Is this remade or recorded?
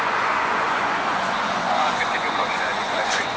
remade